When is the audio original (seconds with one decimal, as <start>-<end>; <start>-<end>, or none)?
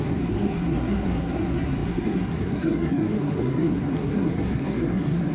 none